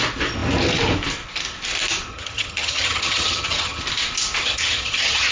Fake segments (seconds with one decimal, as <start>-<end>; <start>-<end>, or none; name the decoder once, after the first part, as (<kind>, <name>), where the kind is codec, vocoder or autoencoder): 2.1-3.8 (vocoder, HiFi-GAN); 4.4-5.3